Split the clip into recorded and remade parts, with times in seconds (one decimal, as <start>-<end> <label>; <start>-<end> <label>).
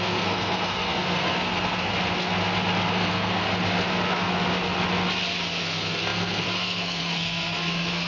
0.0-1.9 remade; 1.9-2.9 recorded; 2.9-3.5 remade; 3.5-5.6 recorded; 5.6-8.1 remade